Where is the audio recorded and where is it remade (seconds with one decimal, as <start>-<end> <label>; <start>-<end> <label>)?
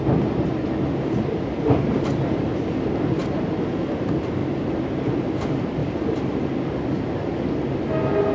0.0-8.3 recorded